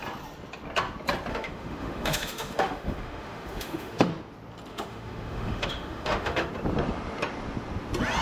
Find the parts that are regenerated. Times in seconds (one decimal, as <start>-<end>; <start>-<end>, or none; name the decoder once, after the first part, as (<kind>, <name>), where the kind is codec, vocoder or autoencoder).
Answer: 1.3-4.1 (autoencoder, DAC-VAE); 4.7-6.5